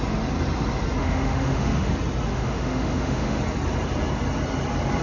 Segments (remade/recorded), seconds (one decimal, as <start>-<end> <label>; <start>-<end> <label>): 0.0-1.0 recorded; 1.0-1.9 remade; 1.9-2.3 recorded; 2.3-3.4 remade; 3.4-5.0 recorded

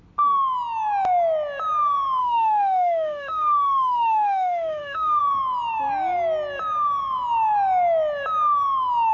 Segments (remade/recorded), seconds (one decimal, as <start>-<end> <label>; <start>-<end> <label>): 0.0-2.2 recorded; 2.2-5.2 remade; 5.2-9.1 recorded

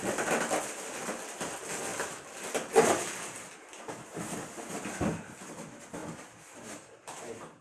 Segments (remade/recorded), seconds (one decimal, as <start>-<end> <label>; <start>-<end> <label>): 0.0-7.6 recorded

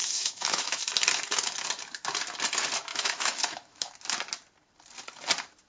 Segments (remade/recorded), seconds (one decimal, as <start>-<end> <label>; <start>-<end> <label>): 0.0-0.8 remade; 0.8-2.9 recorded; 2.9-3.9 remade; 3.9-5.7 recorded

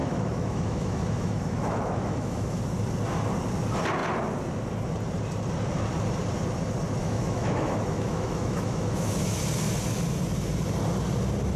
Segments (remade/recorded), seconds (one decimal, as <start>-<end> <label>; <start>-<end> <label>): 0.0-2.6 remade; 2.6-7.0 recorded; 7.0-9.4 remade; 9.4-11.6 recorded

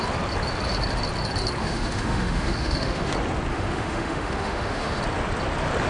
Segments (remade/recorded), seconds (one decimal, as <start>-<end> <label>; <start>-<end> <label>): 0.0-1.6 recorded; 1.6-3.1 remade; 3.1-3.5 recorded; 3.5-5.0 remade; 5.0-5.9 recorded